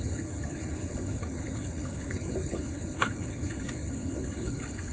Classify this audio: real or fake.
fake